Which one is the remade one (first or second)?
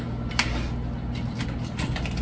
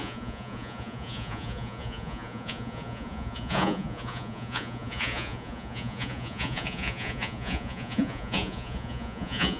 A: second